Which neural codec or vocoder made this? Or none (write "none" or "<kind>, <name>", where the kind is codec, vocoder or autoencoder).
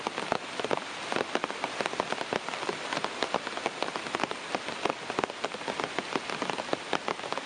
none